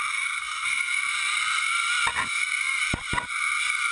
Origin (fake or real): real